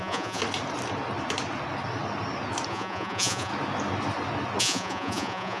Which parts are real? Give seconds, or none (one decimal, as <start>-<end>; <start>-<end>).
0.4-2.7; 3.5-4.6